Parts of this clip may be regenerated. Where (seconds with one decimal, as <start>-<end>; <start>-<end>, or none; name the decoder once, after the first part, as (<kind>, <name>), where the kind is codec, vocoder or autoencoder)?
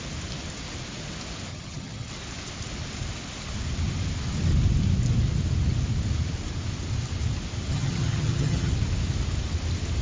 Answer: 1.5-2.1 (vocoder, HiFi-GAN); 7.7-8.7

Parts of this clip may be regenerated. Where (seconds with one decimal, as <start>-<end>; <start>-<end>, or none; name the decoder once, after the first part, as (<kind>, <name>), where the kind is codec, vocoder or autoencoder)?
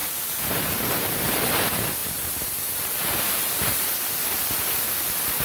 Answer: 0.0-1.1 (vocoder, BigVGAN v2); 2.0-3.8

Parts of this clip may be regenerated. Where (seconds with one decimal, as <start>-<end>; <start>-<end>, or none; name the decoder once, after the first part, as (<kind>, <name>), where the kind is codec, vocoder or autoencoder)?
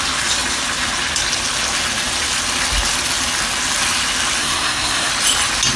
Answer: 4.4-5.1 (codec, SNAC)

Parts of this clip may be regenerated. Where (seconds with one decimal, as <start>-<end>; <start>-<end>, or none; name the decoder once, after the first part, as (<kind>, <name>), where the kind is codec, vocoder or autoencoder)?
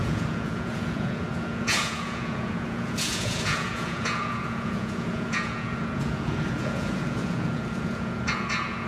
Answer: 0.0-8.9 (vocoder, Vocos)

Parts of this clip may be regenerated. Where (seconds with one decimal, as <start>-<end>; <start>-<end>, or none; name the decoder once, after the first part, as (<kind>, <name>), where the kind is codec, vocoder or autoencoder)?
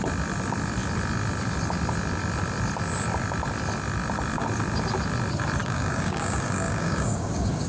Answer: 5.6-7.7 (codec, DAC)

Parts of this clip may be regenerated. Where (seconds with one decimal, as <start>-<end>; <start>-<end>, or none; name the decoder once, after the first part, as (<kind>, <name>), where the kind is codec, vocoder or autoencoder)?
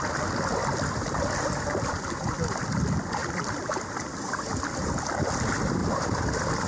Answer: 0.6-1.9 (vocoder, BigVGAN v2); 3.2-3.7; 5.8-6.7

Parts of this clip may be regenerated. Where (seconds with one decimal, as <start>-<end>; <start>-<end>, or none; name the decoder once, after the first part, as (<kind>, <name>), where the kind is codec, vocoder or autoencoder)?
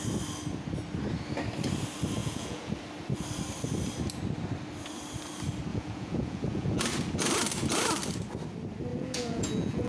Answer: 2.2-2.7 (vocoder, Vocos); 5.7-6.8; 8.9-9.9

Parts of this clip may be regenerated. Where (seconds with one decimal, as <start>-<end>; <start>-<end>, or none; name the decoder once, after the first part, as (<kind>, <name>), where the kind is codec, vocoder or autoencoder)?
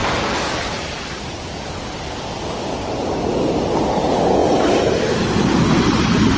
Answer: 0.0-2.7 (vocoder, BigVGAN v2); 4.4-6.4